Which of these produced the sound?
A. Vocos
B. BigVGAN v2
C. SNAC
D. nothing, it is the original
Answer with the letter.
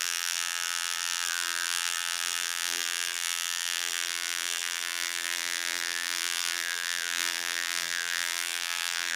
B